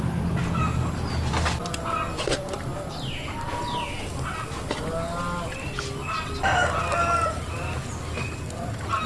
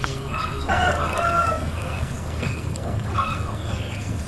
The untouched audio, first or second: first